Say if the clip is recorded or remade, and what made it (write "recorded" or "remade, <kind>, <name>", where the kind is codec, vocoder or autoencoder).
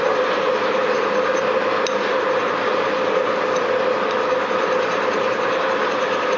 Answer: recorded